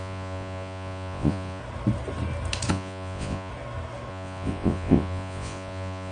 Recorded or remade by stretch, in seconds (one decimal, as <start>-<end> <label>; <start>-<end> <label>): 0.0-1.6 remade; 1.6-2.7 recorded; 2.7-3.5 remade; 3.5-4.1 recorded; 4.1-6.1 remade